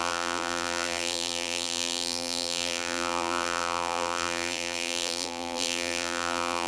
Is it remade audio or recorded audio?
remade